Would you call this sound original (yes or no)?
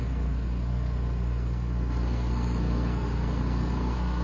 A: no